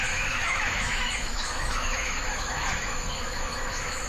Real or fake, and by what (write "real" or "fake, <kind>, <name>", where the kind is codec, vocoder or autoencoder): fake, autoencoder, DAC-VAE